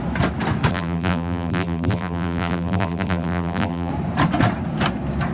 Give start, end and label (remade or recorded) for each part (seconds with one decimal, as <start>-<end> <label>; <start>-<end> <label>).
0.0-0.7 recorded; 0.7-3.9 remade; 3.9-5.3 recorded